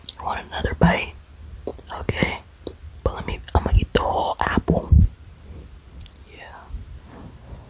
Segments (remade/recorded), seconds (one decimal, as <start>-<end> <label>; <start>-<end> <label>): 0.0-1.7 recorded; 1.7-2.9 remade; 2.9-3.9 recorded; 3.9-6.2 remade; 6.2-7.7 recorded